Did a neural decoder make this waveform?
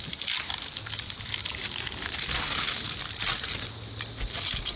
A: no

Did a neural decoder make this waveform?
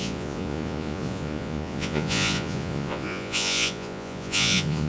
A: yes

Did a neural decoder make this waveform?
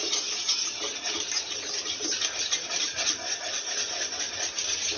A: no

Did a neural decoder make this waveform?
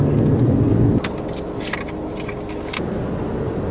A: no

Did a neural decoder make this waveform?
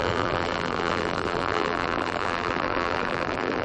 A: yes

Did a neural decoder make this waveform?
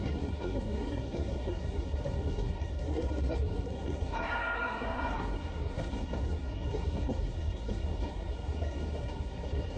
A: yes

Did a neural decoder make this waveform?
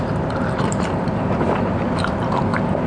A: yes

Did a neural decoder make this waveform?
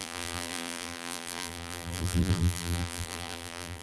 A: yes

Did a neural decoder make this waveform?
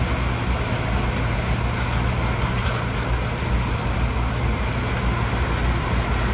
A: no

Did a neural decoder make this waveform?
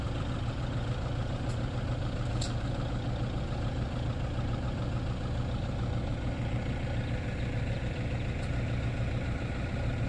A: no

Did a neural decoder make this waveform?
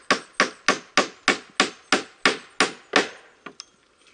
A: no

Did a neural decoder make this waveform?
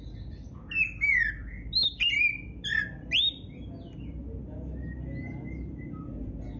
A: no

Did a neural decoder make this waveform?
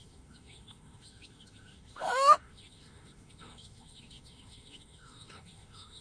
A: yes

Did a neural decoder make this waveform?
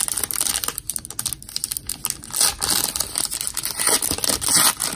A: no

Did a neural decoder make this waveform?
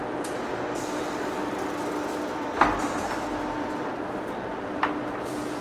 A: no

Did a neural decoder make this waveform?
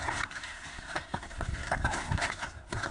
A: yes